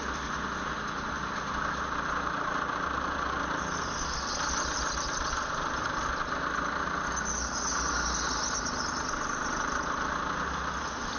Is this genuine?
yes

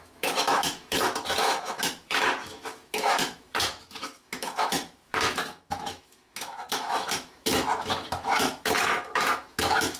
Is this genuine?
no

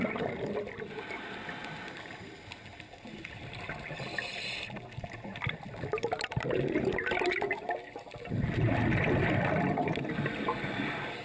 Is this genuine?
yes